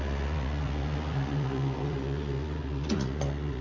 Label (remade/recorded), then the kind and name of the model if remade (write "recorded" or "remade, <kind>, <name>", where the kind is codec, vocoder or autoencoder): remade, vocoder, Vocos